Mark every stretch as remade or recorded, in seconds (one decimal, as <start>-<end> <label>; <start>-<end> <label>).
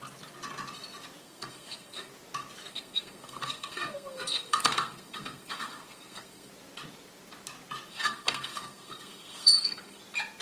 0.0-1.2 recorded; 1.2-2.1 remade; 2.1-2.7 recorded; 2.7-6.5 remade; 6.5-7.9 recorded; 7.9-10.0 remade; 10.0-10.4 recorded